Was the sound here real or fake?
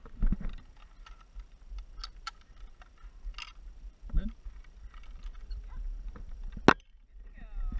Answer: real